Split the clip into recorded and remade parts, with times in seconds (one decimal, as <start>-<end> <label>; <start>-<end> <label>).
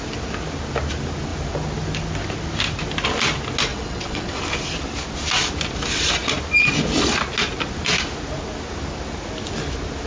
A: 0.0-3.7 recorded; 3.7-4.4 remade; 4.4-10.1 recorded